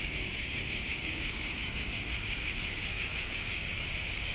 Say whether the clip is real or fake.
fake